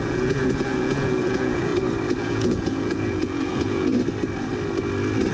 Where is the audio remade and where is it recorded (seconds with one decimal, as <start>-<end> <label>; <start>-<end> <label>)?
0.0-1.7 remade; 1.7-2.2 recorded; 2.2-3.9 remade; 3.9-5.3 recorded